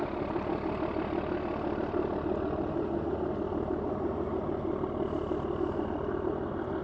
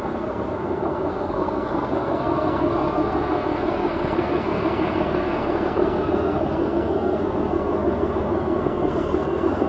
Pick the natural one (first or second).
first